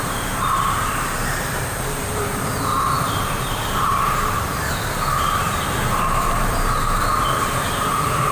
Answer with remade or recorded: remade